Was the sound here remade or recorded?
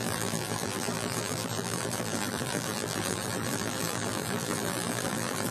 remade